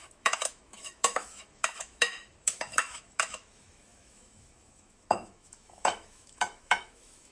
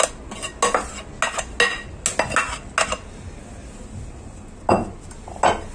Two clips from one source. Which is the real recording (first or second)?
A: second